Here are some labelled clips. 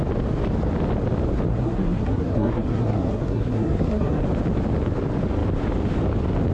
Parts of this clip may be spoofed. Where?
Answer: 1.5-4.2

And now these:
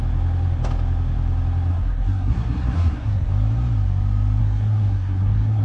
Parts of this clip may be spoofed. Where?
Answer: 1.7-3.3; 4.4-5.6